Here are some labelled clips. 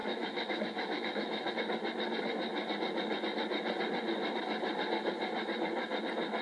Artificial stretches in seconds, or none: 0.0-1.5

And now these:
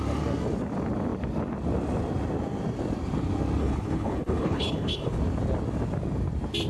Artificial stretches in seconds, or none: 3.6-5.2

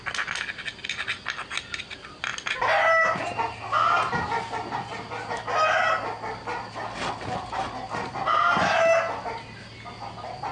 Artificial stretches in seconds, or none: none

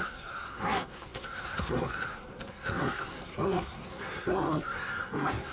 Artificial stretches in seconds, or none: 0.0-5.5

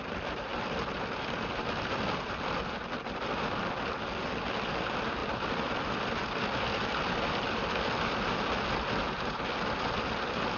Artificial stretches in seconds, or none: none

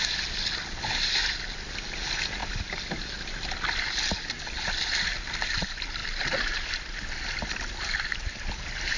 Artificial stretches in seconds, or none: none

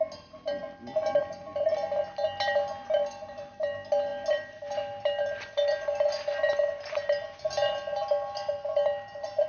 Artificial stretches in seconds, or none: none